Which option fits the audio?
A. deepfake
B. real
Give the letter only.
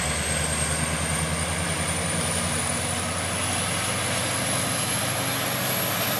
B